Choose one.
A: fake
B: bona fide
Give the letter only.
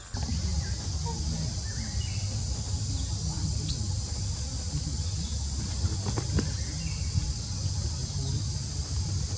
B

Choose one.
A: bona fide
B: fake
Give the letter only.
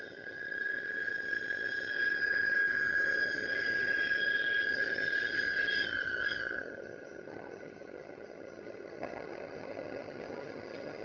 B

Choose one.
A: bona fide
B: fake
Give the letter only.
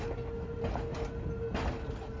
A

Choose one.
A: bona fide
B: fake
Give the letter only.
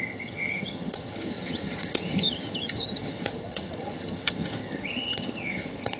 B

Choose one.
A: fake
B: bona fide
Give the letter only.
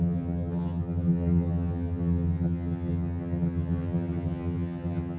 A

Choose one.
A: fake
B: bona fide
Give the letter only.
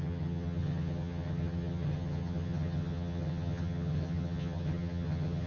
A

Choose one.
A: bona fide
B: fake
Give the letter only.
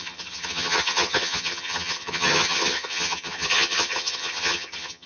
B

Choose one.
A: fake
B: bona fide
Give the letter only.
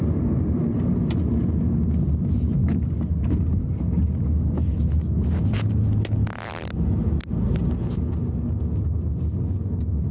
B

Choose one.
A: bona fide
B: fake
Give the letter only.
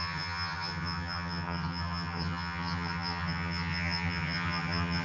B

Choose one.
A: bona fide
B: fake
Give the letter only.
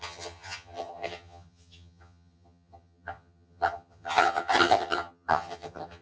B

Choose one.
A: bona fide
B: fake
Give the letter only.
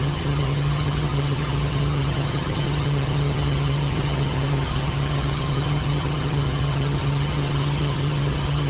B